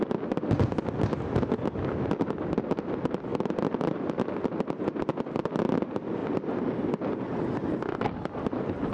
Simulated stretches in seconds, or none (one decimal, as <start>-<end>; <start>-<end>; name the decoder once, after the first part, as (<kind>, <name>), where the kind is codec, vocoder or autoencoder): none